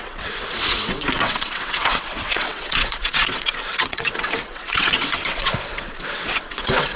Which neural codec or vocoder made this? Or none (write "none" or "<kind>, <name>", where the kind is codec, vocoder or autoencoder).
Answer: vocoder, WaveNeXt